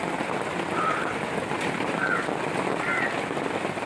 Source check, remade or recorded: recorded